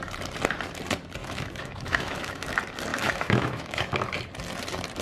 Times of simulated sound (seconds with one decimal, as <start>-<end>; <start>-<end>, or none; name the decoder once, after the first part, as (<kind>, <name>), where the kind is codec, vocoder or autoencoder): 1.2-2.5 (autoencoder, DAC-VAE); 2.9-3.9